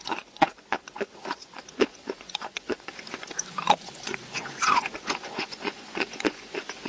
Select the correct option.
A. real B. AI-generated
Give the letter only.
B